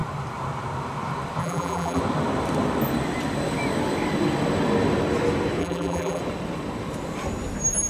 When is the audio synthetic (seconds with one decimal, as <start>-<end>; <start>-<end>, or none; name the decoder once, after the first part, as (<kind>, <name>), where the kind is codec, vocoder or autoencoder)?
1.4-2.0 (vocoder, BigVGAN v2); 5.6-6.2